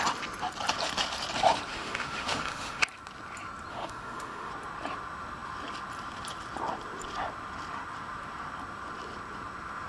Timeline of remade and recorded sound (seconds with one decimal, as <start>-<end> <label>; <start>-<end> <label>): 0.0-1.7 recorded; 1.7-2.8 remade; 2.8-3.7 recorded; 3.7-4.5 remade; 4.5-9.9 recorded